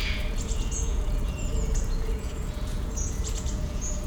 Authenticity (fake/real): fake